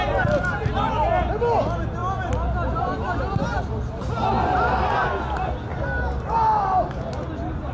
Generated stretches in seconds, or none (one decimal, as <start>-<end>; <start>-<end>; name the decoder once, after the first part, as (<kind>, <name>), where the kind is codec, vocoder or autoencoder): none